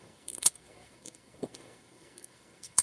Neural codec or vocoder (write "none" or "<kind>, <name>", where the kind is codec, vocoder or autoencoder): codec, SNAC